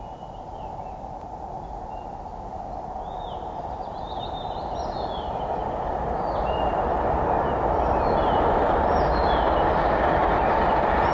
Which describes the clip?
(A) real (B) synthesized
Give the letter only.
A